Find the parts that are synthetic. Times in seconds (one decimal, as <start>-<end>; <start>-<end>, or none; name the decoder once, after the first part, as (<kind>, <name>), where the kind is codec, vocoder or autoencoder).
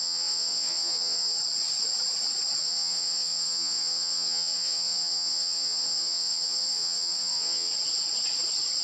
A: 0.0-1.4 (vocoder, WaveNeXt); 2.6-7.7